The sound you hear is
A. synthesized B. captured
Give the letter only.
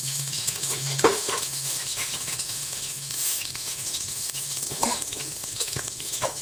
A